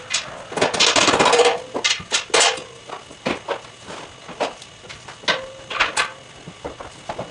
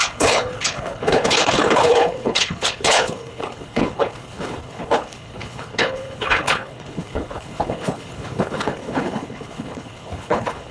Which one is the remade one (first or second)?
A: second